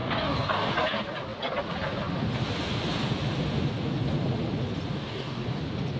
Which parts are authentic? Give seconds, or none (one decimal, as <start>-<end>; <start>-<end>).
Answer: 0.7-4.9; 5.6-6.0

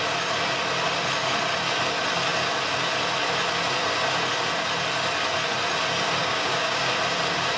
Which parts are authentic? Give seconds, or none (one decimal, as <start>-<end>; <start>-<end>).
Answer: 0.0-6.2; 6.9-7.6

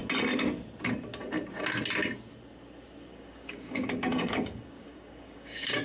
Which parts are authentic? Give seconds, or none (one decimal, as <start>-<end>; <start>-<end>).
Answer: 0.0-3.1

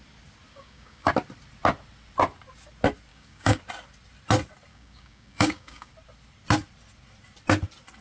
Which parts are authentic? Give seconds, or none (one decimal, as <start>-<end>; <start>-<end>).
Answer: 0.0-0.5; 1.1-3.1; 3.6-4.7; 5.9-8.0

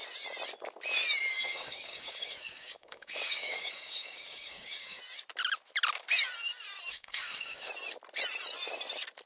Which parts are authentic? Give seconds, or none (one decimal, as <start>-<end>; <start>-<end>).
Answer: 0.0-1.4; 5.0-6.9; 7.7-9.3